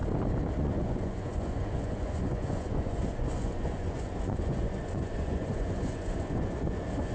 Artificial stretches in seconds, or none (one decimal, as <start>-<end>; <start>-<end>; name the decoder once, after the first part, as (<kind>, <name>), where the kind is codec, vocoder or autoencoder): 0.6-7.1 (vocoder, Vocos)

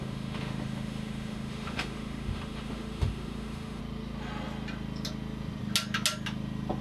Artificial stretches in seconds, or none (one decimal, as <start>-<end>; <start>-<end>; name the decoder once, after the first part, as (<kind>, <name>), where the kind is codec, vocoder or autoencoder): 0.0-3.8 (autoencoder, DAC-VAE)